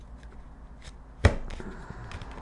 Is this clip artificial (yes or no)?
no